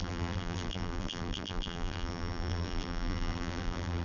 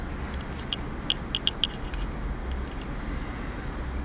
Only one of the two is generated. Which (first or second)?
first